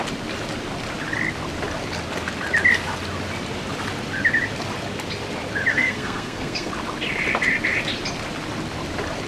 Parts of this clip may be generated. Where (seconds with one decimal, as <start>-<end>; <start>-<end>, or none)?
5.7-6.7